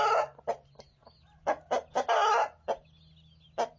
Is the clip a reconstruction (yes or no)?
no